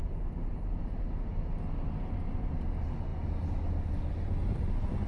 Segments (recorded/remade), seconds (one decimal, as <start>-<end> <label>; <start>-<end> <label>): 0.0-1.1 remade; 1.1-5.1 recorded